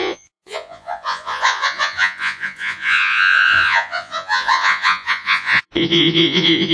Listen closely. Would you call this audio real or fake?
fake